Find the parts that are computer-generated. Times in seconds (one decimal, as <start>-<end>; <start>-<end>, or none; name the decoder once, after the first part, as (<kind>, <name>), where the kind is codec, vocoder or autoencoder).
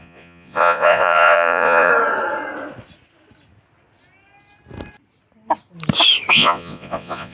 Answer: 0.0-1.9 (vocoder, Vocos); 6.3-7.3